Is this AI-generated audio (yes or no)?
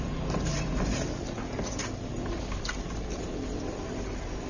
no